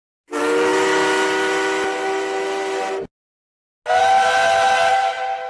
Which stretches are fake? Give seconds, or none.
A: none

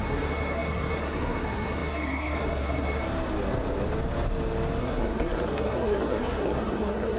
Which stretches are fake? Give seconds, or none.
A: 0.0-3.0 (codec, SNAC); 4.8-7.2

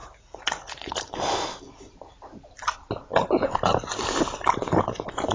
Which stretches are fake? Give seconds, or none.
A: 0.0-1.0 (vocoder, Vocos)